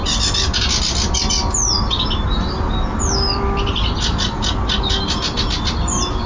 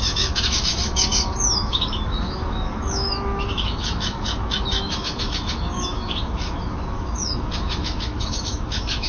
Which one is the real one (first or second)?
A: first